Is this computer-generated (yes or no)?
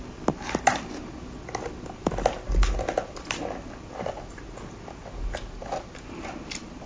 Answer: no